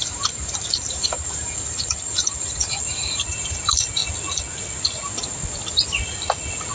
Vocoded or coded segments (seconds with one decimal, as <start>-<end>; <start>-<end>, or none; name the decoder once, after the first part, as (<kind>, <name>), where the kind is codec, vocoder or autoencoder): 0.0-4.0 (vocoder, BigVGAN v2)